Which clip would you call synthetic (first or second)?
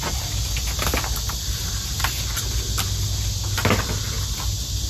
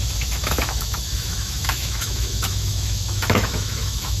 second